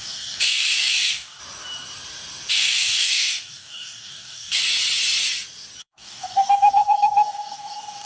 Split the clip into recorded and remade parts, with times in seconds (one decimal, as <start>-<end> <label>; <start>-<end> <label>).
0.0-1.4 remade; 1.4-2.5 recorded; 2.5-4.6 remade; 4.6-5.8 recorded; 5.8-8.1 remade